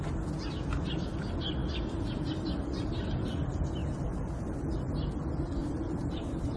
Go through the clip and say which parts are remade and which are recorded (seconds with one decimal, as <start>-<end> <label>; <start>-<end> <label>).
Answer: 0.0-1.6 recorded; 1.6-2.5 remade; 2.5-3.8 recorded; 3.8-4.7 remade; 4.7-5.6 recorded; 5.6-6.6 remade